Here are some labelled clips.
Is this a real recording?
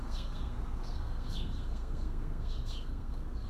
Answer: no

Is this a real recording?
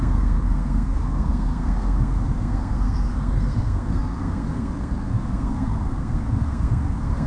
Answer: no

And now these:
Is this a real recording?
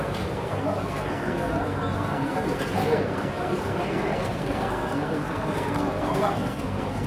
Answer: no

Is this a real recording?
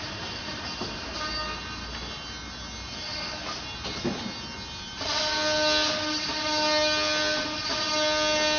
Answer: yes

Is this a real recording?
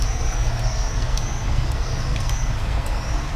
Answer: no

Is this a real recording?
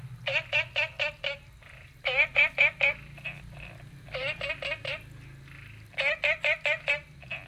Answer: yes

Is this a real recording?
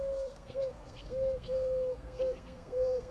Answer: no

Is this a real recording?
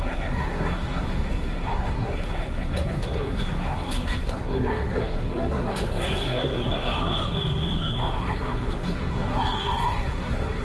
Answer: no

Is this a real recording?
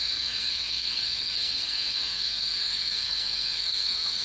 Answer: no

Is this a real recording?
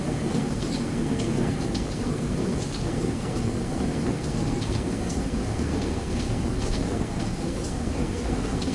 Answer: no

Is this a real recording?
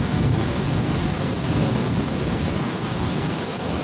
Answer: no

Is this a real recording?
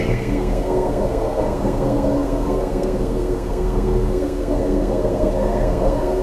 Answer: no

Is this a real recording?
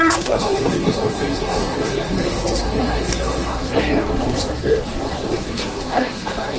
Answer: no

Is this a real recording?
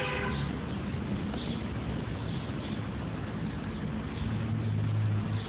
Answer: yes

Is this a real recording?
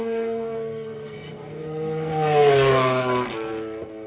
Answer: no